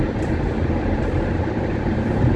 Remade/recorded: remade